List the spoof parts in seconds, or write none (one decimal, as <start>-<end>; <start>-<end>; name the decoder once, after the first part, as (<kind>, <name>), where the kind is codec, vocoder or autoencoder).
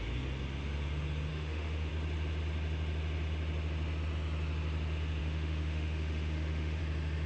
1.3-1.9 (autoencoder, DAC-VAE); 5.2-6.8